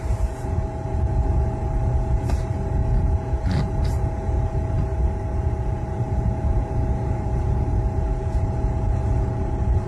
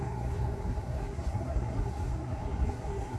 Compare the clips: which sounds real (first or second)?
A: first